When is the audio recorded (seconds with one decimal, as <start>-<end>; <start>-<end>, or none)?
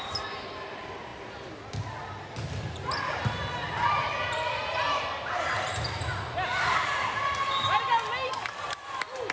0.0-9.3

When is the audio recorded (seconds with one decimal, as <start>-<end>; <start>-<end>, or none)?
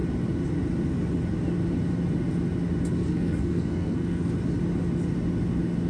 0.0-3.0; 4.3-5.9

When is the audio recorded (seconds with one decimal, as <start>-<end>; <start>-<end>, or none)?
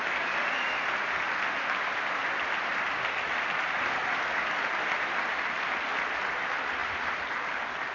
0.0-2.2; 4.3-6.8; 7.4-7.9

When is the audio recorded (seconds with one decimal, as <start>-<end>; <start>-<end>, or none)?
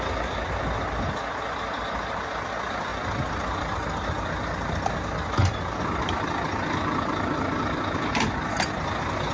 0.0-9.3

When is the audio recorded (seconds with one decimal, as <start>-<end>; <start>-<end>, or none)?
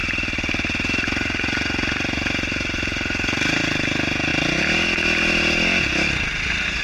0.0-6.8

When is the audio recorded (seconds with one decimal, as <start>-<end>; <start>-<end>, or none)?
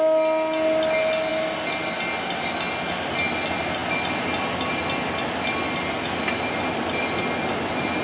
0.0-8.0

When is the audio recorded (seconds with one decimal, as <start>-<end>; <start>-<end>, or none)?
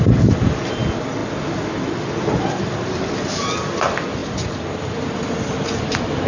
0.0-4.2; 5.3-6.3